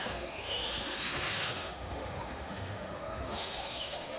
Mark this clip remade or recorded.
remade